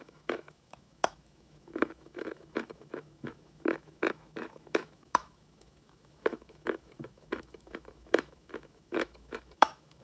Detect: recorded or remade remade